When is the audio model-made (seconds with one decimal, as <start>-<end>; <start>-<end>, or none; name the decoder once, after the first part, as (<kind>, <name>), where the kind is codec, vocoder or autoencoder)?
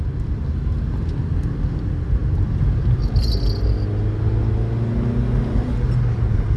none